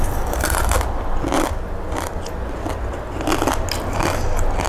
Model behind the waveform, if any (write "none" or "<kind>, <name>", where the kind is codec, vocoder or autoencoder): none